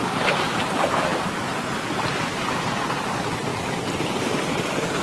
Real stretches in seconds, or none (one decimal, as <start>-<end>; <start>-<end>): 3.5-4.2